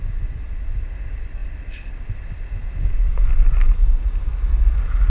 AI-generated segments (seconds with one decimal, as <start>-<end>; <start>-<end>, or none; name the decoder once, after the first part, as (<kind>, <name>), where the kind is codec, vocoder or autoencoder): none